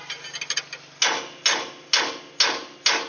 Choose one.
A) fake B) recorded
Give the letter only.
B